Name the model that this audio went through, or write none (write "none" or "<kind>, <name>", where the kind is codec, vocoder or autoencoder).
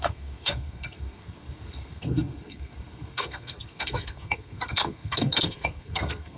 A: codec, SNAC